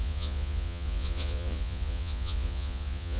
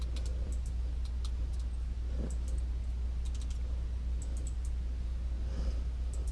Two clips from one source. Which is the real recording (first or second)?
second